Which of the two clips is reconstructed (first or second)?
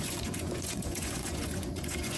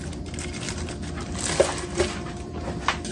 first